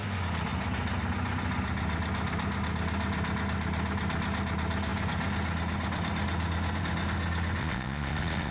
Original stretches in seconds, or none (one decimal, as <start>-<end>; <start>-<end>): 0.0-7.6

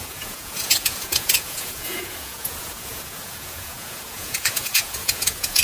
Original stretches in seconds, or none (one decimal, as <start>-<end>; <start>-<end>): none

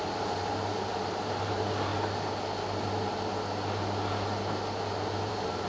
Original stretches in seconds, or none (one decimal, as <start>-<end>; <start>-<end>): 1.9-5.3

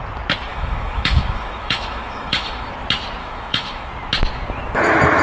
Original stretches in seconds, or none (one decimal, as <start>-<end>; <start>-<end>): 0.0-0.5; 2.7-3.2; 3.9-5.2